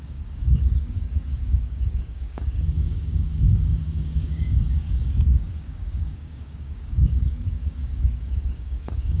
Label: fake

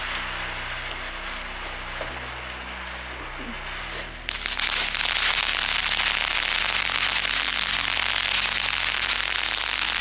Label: real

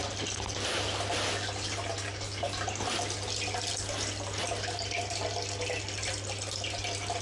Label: real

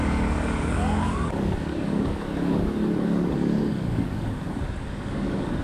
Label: fake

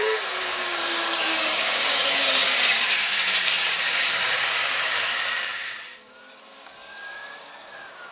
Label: fake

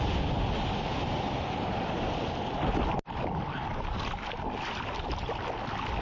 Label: real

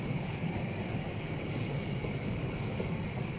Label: fake